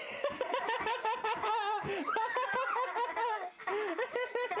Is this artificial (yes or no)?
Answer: no